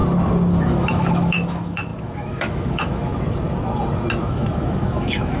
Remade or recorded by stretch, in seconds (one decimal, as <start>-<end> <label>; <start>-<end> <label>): 0.0-0.6 recorded; 0.6-3.1 remade; 3.1-4.2 recorded; 4.2-5.4 remade